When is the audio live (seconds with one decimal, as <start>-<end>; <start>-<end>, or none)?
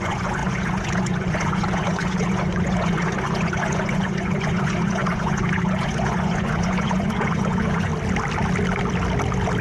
7.9-9.6